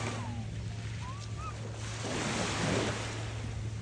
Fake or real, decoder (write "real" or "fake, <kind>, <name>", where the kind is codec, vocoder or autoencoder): real